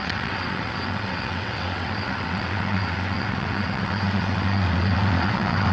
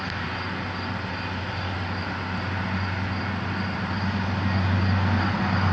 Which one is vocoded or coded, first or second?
first